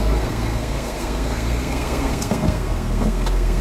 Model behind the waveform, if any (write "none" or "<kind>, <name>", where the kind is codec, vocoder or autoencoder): codec, SNAC